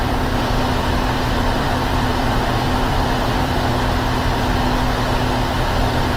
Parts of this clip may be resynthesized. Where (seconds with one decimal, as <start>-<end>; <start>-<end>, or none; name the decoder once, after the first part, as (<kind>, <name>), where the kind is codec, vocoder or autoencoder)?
0.0-3.7 (vocoder, BigVGAN v2)